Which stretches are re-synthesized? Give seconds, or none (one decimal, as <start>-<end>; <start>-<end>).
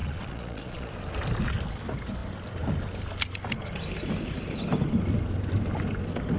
0.0-0.9